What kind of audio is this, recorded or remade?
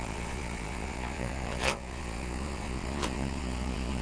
remade